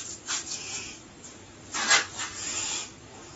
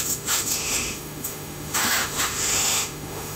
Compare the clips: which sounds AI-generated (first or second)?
second